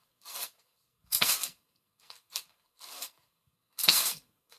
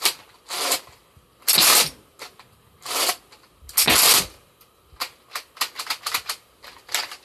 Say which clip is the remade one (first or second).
first